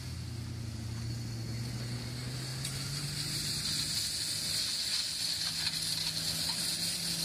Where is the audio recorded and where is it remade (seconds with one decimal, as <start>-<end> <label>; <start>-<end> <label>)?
0.0-7.2 recorded